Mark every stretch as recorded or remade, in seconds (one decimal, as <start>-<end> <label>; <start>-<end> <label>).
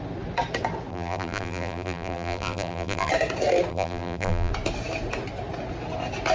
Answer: 0.0-0.9 recorded; 0.9-3.1 remade; 3.1-3.7 recorded; 3.7-4.5 remade; 4.5-6.3 recorded